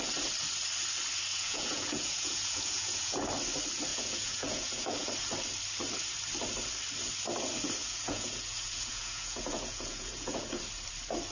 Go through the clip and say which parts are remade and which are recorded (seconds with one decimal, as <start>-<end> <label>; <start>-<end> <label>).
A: 0.0-1.3 recorded; 1.3-3.2 remade; 3.2-3.9 recorded; 3.9-5.1 remade; 5.1-7.8 recorded; 7.8-10.6 remade; 10.6-11.3 recorded